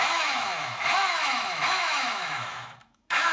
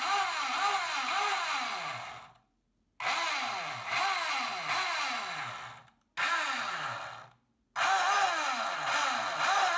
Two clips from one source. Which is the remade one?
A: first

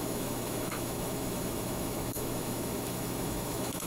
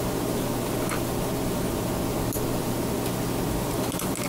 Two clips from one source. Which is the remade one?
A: first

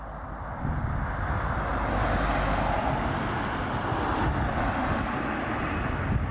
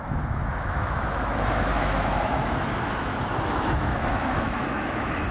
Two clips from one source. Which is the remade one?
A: second